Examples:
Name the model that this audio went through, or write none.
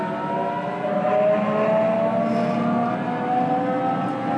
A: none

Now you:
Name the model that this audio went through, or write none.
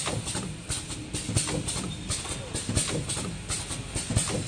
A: none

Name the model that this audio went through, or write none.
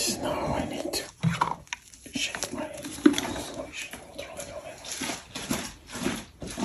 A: none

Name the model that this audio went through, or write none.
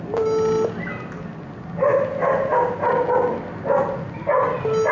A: none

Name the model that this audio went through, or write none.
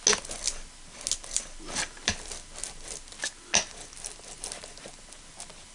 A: none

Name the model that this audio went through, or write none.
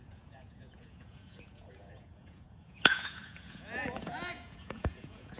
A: vocoder, Vocos